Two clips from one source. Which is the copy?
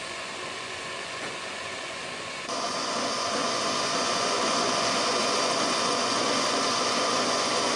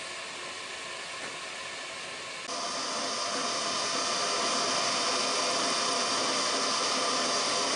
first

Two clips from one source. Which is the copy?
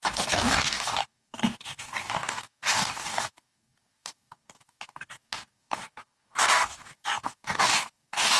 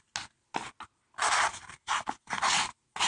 first